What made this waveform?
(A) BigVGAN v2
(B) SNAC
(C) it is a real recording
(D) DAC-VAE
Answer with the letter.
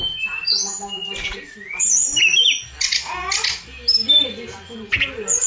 C